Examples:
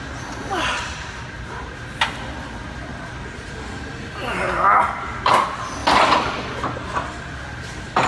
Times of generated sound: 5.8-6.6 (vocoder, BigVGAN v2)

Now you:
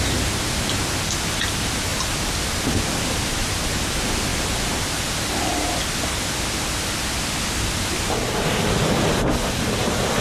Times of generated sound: 4.3-6.2 (vocoder, BigVGAN v2)

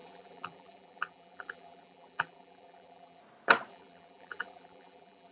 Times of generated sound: 0.0-3.2 (vocoder, BigVGAN v2); 3.7-5.3

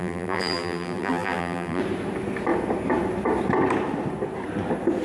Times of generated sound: 0.0-1.8 (vocoder, BigVGAN v2)

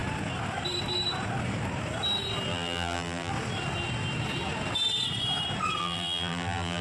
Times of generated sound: 2.5-3.3 (vocoder, BigVGAN v2); 5.8-6.8